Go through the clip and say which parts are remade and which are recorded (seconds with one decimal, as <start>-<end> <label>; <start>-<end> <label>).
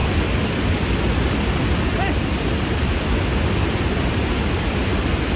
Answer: 0.0-3.2 remade; 3.2-5.4 recorded